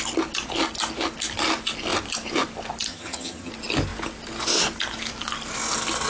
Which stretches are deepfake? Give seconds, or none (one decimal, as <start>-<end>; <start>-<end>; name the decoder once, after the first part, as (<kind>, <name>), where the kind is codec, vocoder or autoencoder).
2.9-3.5 (vocoder, HiFi-GAN)